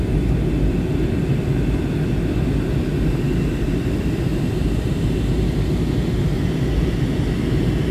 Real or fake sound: real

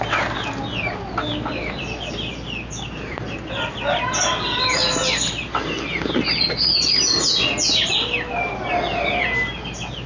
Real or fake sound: real